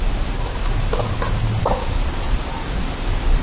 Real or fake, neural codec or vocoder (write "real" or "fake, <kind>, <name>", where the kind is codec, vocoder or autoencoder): real